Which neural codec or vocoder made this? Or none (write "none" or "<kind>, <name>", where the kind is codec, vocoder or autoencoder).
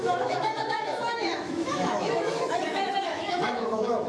autoencoder, DAC-VAE